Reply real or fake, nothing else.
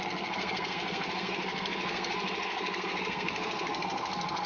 fake